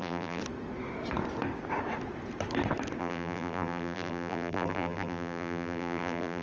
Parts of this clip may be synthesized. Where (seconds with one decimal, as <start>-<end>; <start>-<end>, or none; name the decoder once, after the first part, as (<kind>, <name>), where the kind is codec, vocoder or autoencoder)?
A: 0.0-0.4 (vocoder, BigVGAN v2); 3.0-6.4

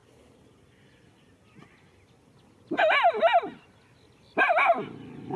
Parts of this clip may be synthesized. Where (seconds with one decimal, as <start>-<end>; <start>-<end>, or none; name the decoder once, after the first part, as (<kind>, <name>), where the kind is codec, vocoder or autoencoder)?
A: none

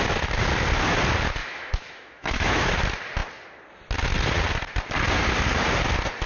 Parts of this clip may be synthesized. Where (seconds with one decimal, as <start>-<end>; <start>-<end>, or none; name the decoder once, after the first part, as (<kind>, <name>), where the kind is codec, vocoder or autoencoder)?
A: 1.4-2.7 (autoencoder, DAC-VAE)

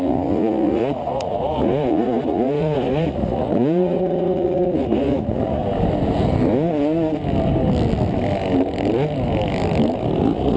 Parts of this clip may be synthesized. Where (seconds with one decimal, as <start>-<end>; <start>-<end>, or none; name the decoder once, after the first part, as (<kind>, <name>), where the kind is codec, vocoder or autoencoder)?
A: 0.0-5.6 (vocoder, Vocos); 10.2-10.6

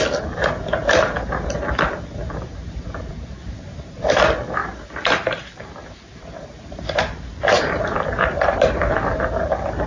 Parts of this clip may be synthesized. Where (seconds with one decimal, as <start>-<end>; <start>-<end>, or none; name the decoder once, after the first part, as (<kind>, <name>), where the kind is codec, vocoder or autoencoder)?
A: 2.2-4.0 (vocoder, BigVGAN v2); 4.6-9.1

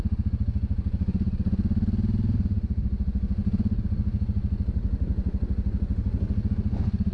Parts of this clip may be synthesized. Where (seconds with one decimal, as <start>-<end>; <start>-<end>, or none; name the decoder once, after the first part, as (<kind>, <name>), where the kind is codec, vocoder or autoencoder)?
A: none

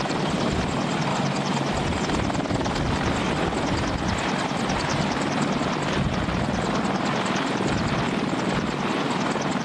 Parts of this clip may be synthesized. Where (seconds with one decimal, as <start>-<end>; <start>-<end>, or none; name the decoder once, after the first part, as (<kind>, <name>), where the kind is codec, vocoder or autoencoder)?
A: none